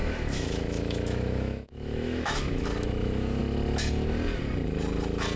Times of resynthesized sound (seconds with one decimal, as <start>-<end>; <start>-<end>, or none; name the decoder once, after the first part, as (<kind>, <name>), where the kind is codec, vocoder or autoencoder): 0.0-3.4 (autoencoder, DAC-VAE)

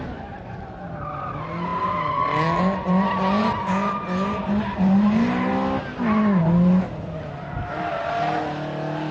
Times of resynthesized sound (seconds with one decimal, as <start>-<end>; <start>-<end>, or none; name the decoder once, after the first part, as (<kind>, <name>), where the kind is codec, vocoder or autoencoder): 3.4-5.5 (vocoder, BigVGAN v2)

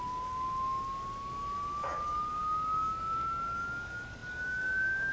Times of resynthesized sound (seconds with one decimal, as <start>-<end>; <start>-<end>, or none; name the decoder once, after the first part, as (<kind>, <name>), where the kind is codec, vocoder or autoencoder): 0.0-5.1 (codec, DAC)

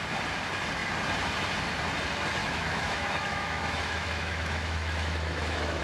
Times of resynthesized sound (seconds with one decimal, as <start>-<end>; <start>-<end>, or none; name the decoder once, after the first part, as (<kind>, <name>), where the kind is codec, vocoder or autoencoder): 2.4-5.8 (autoencoder, DAC-VAE)

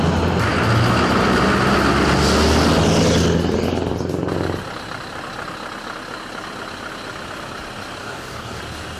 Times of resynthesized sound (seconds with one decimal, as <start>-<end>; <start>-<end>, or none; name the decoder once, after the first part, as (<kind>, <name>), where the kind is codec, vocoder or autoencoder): 8.0-8.6 (codec, DAC)

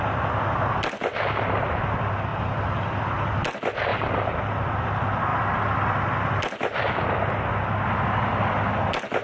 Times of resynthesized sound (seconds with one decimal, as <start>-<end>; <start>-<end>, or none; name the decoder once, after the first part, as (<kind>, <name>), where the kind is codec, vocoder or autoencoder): 2.3-3.0 (vocoder, BigVGAN v2); 3.9-4.5

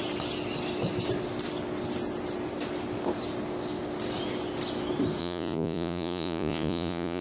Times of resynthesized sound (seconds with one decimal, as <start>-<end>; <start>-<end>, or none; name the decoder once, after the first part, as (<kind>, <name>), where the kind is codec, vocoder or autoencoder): 5.2-7.2 (vocoder, Vocos)